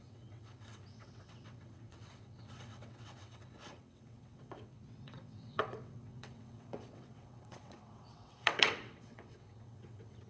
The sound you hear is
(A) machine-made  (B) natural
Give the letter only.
A